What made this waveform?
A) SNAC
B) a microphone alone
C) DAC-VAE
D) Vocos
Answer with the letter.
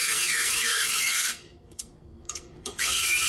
A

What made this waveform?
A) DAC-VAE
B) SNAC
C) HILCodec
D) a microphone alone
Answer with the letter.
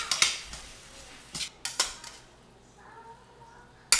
D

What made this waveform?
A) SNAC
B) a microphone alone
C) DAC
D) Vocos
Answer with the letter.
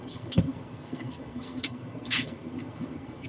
A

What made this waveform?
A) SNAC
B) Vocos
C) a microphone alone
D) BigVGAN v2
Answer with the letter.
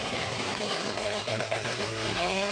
A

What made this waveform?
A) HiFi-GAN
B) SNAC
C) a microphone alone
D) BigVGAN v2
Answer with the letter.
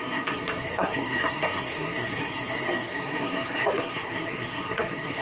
B